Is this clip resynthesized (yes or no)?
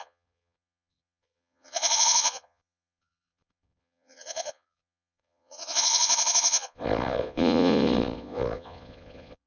yes